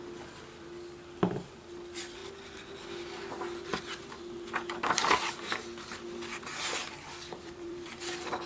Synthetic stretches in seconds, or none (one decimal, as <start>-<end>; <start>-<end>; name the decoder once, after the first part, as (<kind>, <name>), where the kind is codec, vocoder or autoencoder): 6.8-7.9 (vocoder, BigVGAN v2)

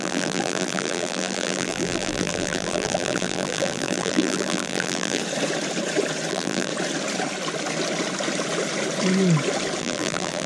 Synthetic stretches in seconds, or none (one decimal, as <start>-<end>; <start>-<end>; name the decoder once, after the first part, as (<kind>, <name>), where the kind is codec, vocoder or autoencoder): 0.0-5.2 (vocoder, BigVGAN v2); 6.3-6.7; 9.8-10.5

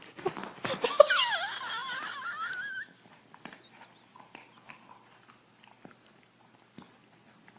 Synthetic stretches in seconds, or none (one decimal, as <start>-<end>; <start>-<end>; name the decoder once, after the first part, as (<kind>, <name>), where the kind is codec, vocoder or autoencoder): none